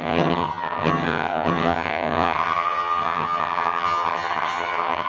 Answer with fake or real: fake